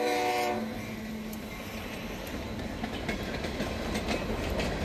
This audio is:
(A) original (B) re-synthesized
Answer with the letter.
A